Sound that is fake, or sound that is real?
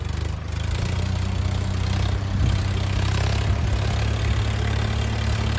real